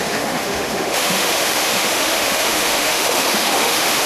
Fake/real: fake